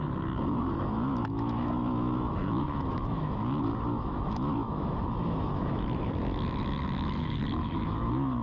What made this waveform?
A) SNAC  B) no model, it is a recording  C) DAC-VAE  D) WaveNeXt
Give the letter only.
C